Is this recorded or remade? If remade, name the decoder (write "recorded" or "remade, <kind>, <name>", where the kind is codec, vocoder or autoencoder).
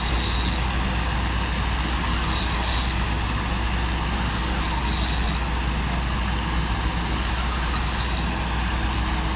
recorded